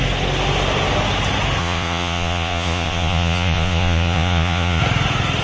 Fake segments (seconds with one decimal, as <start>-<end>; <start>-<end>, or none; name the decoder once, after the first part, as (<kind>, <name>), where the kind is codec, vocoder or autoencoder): 1.6-4.8 (vocoder, Vocos)